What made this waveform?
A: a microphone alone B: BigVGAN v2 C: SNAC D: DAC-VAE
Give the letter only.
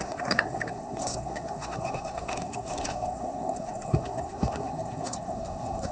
C